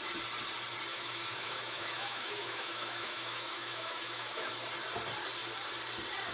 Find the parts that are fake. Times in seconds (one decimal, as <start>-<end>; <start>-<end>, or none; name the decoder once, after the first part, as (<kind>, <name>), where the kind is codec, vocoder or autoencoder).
0.9-4.5 (autoencoder, DAC-VAE)